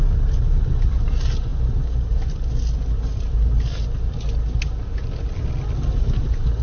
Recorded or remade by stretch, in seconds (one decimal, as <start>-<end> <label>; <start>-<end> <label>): 0.0-6.6 recorded